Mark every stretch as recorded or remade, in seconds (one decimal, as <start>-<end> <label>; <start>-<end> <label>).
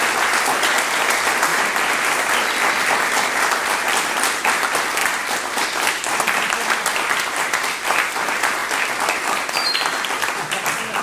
0.0-1.5 recorded; 1.5-2.1 remade; 2.1-11.0 recorded